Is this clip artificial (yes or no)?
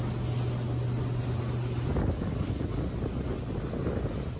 no